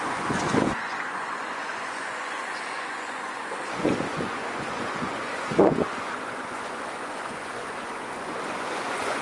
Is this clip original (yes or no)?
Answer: no